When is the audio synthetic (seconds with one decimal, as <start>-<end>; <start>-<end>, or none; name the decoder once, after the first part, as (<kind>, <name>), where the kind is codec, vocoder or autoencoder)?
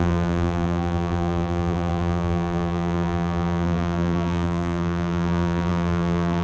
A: 0.0-6.4 (vocoder, BigVGAN v2)